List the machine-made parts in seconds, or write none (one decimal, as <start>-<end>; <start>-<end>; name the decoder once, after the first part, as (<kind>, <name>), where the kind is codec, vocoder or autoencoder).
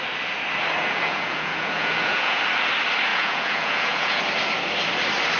0.8-2.4 (vocoder, Vocos); 3.1-4.2